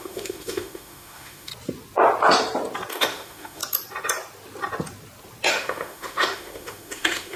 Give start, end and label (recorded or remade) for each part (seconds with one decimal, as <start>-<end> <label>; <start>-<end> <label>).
0.0-1.5 remade; 1.5-2.9 recorded; 2.9-3.6 remade; 3.6-5.5 recorded; 5.5-7.4 remade